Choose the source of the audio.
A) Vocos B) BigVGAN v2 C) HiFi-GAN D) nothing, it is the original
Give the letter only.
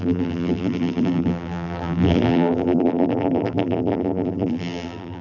B